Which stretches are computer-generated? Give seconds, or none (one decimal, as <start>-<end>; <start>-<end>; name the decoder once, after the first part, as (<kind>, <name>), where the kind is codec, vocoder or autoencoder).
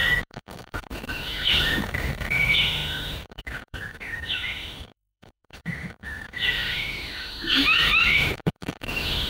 0.0-9.3 (autoencoder, DAC-VAE)